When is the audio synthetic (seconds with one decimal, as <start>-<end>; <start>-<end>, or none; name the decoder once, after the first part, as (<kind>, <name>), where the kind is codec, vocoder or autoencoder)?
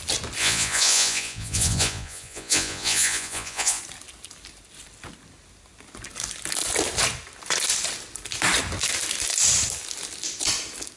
0.4-3.8 (vocoder, Vocos)